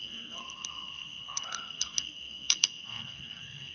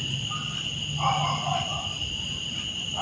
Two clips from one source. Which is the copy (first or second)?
first